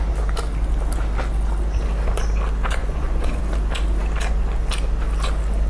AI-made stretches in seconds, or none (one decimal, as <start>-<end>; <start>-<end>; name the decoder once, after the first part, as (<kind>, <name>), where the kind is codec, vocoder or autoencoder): 2.8-3.4 (vocoder, Vocos)